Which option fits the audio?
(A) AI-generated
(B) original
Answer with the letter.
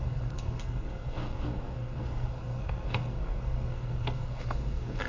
A